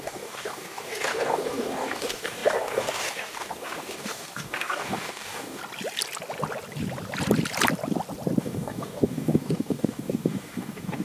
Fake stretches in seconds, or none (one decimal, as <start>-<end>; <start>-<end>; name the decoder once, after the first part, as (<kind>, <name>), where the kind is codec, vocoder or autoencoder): 0.0-5.6 (codec, DAC); 8.4-11.0